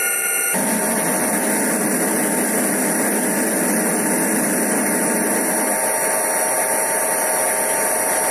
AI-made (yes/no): no